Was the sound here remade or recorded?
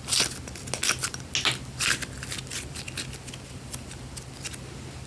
recorded